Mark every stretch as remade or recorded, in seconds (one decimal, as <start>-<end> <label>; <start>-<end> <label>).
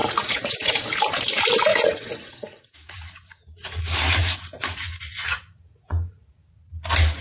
0.0-0.7 remade; 0.7-1.7 recorded; 1.7-3.8 remade; 3.8-4.2 recorded; 4.2-6.4 remade; 6.4-7.2 recorded